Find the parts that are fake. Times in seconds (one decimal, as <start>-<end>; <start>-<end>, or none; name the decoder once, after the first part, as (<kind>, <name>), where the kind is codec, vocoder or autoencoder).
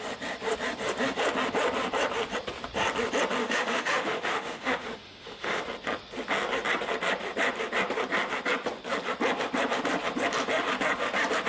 3.4-5.6 (autoencoder, DAC-VAE)